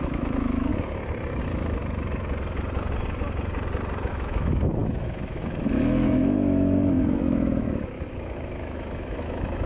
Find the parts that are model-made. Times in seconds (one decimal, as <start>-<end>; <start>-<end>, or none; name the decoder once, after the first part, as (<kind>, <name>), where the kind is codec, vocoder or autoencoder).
0.0-0.7 (autoencoder, DAC-VAE); 1.4-1.8; 4.1-9.7